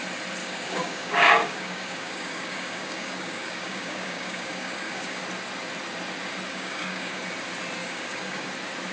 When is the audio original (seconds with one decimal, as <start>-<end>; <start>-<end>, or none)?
0.0-0.4; 5.2-6.5; 7.2-7.8; 8.5-8.9